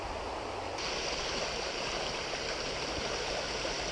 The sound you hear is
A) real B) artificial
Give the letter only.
A